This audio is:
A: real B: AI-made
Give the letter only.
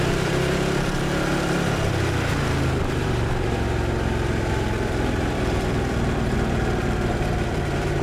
B